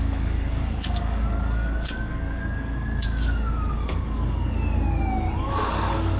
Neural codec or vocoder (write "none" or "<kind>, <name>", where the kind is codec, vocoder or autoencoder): codec, DAC